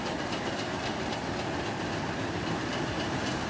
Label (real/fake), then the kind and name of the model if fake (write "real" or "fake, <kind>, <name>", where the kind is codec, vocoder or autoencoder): fake, vocoder, BigVGAN v2